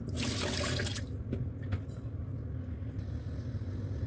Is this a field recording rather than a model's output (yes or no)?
yes